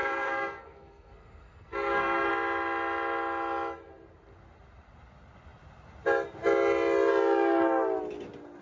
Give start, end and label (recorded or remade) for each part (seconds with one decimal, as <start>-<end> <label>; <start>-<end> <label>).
0.0-2.3 remade; 2.3-8.6 recorded